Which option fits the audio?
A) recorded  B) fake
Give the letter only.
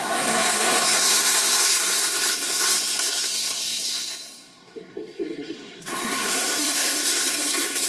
B